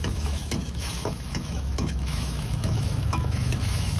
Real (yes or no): no